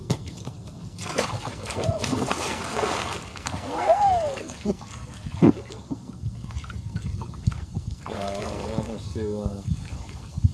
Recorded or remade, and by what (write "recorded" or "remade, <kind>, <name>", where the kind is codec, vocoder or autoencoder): remade, codec, SNAC